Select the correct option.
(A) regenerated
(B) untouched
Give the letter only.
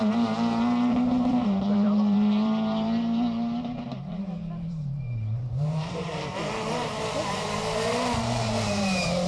A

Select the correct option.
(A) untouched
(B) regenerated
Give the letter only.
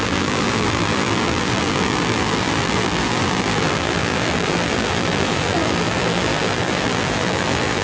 B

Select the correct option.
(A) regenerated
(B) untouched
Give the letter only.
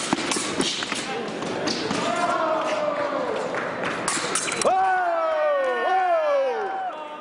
B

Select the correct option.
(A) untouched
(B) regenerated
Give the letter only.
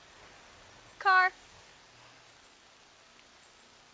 A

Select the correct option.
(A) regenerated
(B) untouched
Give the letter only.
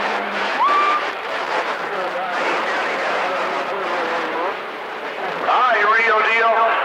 A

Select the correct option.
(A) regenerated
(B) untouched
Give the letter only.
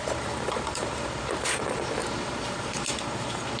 A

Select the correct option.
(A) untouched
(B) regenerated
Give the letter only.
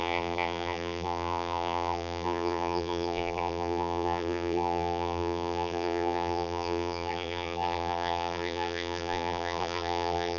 B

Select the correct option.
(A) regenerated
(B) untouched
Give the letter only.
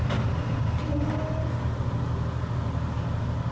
B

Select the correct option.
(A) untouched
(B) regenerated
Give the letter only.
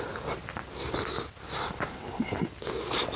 A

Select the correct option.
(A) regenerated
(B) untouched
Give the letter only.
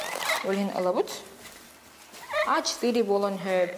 A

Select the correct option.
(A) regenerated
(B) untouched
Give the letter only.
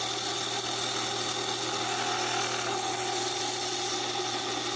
B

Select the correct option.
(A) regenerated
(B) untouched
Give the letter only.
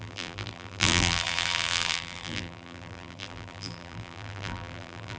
A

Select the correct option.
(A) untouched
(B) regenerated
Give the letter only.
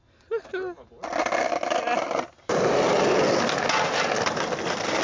A